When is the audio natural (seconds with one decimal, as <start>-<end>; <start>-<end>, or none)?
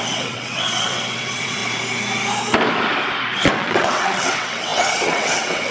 1.6-3.6